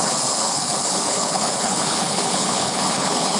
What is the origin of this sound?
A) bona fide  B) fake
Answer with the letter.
B